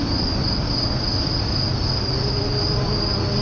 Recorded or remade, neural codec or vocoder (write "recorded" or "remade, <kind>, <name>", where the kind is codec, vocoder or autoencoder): recorded